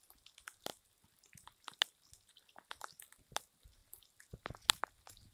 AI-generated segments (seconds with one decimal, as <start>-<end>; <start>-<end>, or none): none

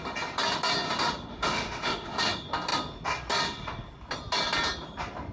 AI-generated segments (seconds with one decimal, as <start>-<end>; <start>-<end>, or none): 1.3-2.2

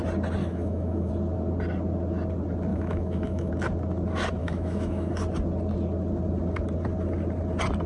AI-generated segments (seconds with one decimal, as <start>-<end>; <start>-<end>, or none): 0.4-1.1; 2.7-3.5; 4.4-5.1

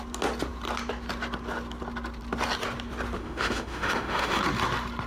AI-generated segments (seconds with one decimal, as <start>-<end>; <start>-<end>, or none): 3.2-4.4

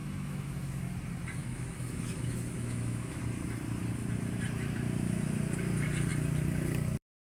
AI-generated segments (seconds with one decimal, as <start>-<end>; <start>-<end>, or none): 0.0-0.9; 1.4-3.2

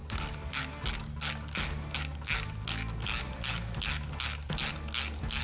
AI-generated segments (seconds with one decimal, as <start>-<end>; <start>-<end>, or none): none

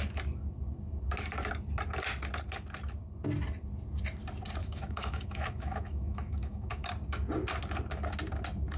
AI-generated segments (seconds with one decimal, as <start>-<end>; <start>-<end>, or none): 4.6-6.9

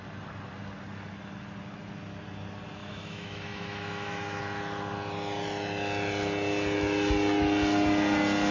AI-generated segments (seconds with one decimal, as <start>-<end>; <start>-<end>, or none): 2.8-4.4